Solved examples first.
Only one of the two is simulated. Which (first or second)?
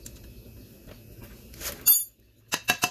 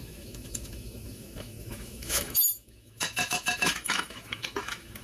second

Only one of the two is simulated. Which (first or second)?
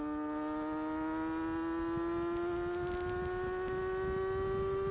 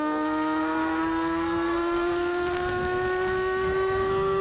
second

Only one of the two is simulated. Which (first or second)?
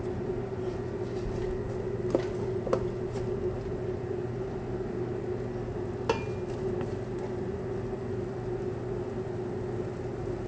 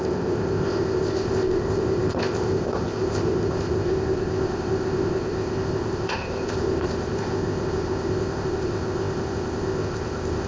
second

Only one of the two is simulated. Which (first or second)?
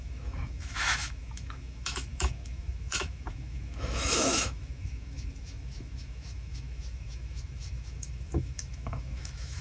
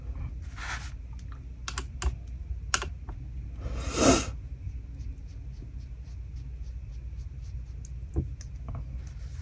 first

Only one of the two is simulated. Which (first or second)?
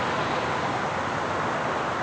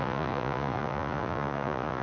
second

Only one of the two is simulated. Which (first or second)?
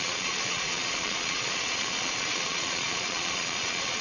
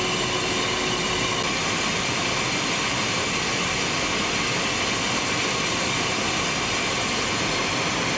first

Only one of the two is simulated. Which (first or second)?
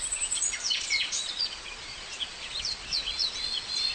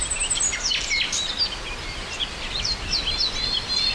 first